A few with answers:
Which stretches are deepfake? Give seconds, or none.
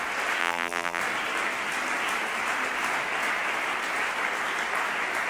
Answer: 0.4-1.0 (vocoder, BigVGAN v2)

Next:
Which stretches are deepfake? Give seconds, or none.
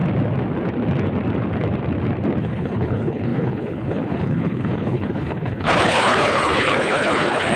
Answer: 2.4-7.6 (codec, HILCodec)